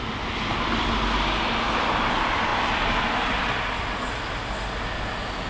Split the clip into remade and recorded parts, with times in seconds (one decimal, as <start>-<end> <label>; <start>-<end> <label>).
0.0-5.5 recorded

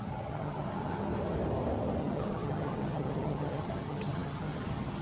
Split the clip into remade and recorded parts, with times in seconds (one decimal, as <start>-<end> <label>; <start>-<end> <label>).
0.0-1.1 remade; 1.1-2.0 recorded; 2.0-5.0 remade

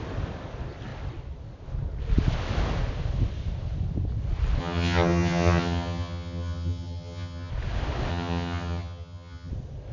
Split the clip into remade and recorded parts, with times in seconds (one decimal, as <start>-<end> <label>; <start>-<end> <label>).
0.0-4.6 recorded; 4.6-7.5 remade; 7.5-8.1 recorded; 8.1-9.5 remade; 9.5-9.9 recorded

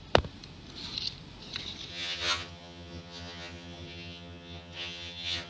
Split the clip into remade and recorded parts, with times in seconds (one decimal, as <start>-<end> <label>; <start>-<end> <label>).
0.0-1.9 recorded; 1.9-5.5 remade